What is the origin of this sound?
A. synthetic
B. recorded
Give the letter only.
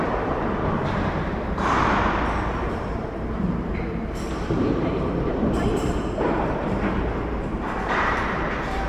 A